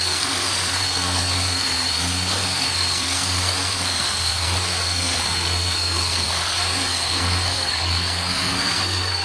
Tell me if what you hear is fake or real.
fake